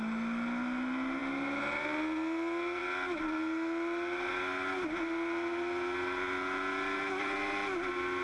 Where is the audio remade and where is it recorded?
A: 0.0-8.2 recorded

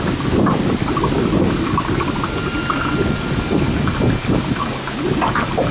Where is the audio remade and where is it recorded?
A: 0.0-2.5 recorded; 2.5-3.3 remade; 3.3-4.2 recorded; 4.2-4.7 remade; 4.7-5.7 recorded

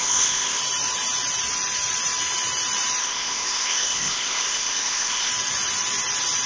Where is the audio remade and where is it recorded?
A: 0.0-0.6 remade; 0.6-3.0 recorded; 3.0-5.3 remade; 5.3-6.5 recorded

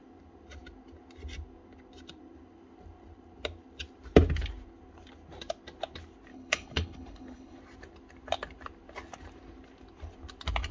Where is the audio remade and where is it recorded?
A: 0.0-6.3 recorded; 6.3-7.6 remade; 7.6-10.7 recorded